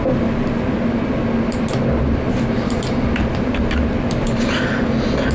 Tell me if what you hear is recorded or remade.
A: recorded